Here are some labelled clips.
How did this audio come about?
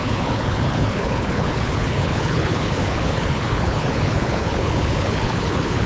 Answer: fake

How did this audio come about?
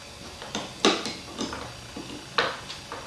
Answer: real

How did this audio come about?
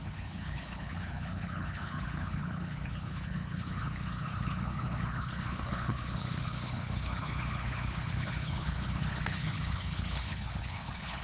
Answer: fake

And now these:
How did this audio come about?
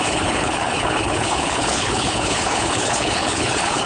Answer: fake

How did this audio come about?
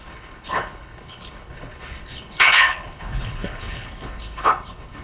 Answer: fake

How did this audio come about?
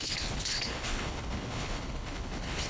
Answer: fake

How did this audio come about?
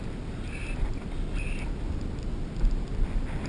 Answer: real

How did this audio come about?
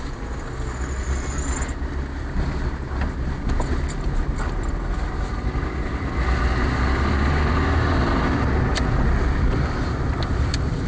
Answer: real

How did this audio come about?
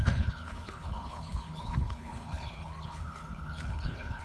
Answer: fake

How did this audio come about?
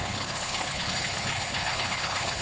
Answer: fake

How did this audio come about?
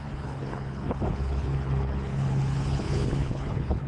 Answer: fake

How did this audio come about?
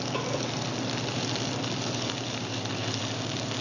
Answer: real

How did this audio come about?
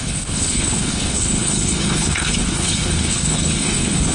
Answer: fake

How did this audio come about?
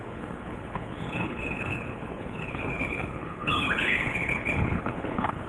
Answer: fake